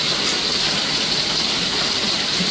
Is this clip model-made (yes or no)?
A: no